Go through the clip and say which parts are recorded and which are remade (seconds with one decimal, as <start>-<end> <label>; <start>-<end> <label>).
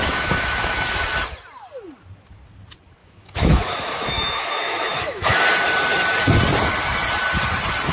0.0-1.0 remade; 1.0-3.0 recorded; 3.0-5.4 remade; 5.4-7.9 recorded